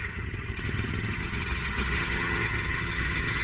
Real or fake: fake